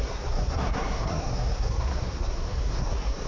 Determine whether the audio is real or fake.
fake